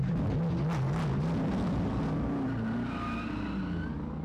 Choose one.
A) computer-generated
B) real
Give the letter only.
B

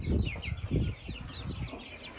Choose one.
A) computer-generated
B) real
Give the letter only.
B